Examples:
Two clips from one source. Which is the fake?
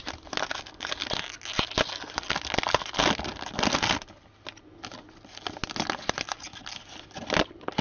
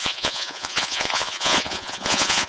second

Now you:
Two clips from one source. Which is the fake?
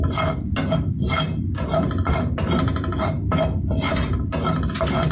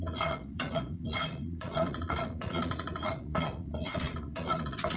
second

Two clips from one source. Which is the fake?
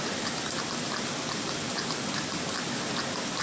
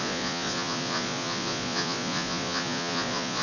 second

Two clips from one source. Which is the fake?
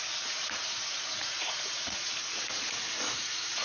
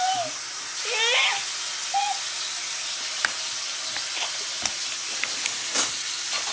first